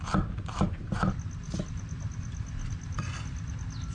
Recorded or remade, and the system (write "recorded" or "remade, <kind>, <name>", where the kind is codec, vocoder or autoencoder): recorded